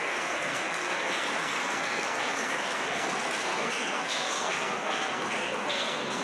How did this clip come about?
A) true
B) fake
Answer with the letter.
B